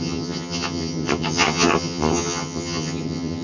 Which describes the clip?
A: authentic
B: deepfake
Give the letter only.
B